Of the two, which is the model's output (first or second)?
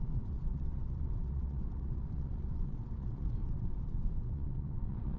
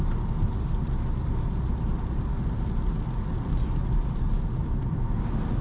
first